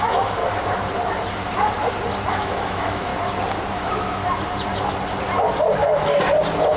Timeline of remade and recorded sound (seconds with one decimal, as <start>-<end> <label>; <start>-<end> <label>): 0.0-0.4 remade; 0.4-2.3 recorded; 2.3-3.1 remade; 3.1-3.7 recorded; 3.7-4.2 remade; 4.2-6.8 recorded